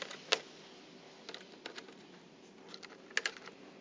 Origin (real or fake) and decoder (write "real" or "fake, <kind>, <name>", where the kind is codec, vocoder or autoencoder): real